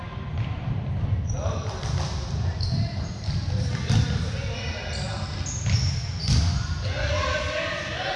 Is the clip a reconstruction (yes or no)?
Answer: no